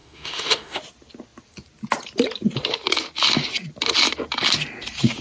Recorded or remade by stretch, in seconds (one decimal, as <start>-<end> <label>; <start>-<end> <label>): 0.0-0.8 remade; 0.8-5.2 recorded